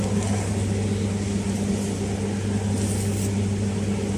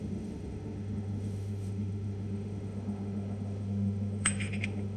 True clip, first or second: first